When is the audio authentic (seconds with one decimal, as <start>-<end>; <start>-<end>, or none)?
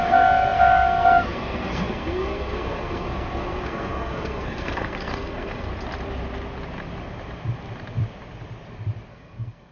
5.7-9.1